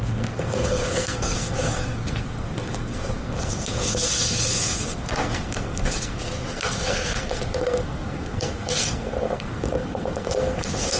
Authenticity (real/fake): fake